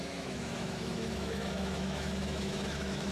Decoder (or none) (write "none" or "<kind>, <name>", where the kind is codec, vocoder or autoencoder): autoencoder, DAC-VAE